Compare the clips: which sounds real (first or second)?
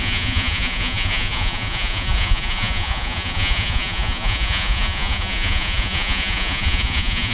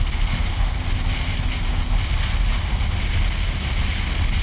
second